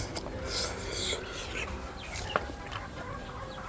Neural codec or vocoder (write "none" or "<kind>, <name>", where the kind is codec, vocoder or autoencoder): none